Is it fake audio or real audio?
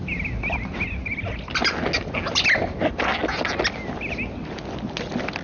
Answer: real